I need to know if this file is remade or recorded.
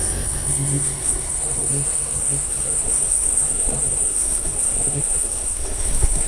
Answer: remade